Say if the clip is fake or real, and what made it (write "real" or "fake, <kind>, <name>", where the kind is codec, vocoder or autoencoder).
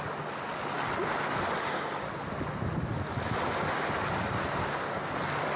real